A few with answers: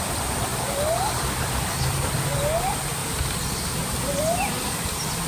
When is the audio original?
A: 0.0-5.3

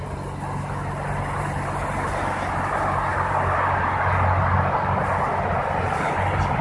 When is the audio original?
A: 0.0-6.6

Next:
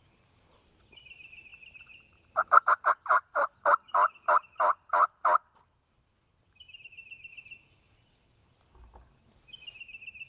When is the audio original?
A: 0.0-10.3

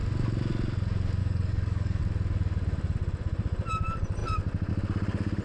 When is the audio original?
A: 0.0-1.2; 2.0-5.4

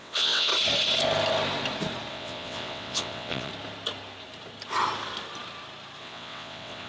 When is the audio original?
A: 0.5-2.1; 3.5-6.0